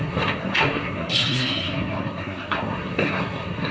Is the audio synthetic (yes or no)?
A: yes